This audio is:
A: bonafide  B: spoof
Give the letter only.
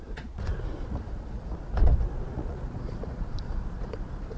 B